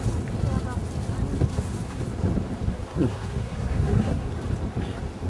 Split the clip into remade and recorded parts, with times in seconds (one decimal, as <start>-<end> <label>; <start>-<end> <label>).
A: 0.0-1.5 recorded; 1.5-2.0 remade; 2.0-2.7 recorded; 2.7-4.3 remade; 4.3-5.3 recorded